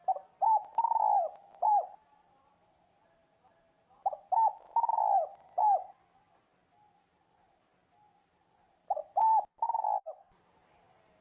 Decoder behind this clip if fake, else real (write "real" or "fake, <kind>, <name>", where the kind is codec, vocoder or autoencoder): real